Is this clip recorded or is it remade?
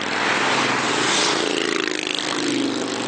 recorded